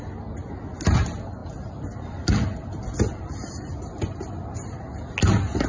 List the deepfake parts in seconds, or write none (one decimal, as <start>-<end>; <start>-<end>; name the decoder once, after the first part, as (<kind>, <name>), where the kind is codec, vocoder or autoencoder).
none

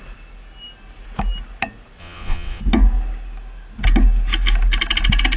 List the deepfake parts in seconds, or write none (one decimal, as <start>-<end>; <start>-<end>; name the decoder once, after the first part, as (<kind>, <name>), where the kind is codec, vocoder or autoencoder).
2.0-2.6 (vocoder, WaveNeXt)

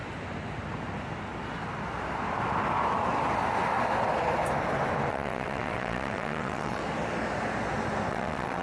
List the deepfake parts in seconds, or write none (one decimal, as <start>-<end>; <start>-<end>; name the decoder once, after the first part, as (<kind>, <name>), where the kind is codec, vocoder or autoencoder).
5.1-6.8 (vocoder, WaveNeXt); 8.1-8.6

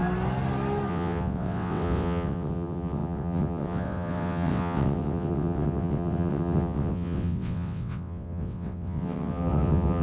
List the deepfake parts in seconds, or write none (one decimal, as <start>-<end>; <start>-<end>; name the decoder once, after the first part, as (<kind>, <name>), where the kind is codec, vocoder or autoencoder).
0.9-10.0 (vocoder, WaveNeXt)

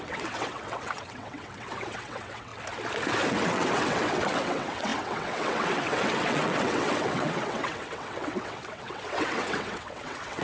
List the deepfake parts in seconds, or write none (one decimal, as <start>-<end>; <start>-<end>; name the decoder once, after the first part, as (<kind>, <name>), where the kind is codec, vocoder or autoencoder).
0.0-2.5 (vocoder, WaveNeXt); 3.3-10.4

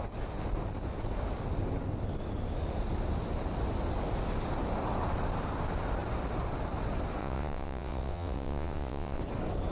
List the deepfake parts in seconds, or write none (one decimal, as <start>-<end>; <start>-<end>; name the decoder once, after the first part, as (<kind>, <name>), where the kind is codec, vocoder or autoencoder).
7.2-9.2 (vocoder, WaveNeXt)

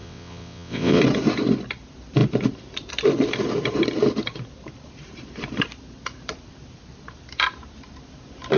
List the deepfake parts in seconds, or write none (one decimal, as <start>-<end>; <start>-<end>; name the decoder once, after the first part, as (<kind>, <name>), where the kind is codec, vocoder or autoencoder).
0.0-1.0 (vocoder, WaveNeXt)

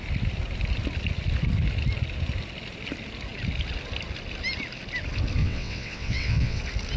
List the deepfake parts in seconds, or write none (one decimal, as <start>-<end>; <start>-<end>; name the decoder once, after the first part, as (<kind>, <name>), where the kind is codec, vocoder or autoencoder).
5.4-6.6 (vocoder, WaveNeXt)